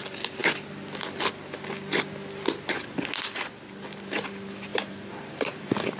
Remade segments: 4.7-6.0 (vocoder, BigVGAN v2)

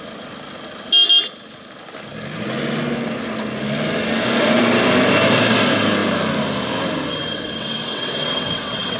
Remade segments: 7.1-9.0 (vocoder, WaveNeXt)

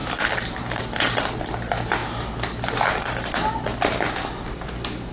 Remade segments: 0.0-0.8 (vocoder, BigVGAN v2)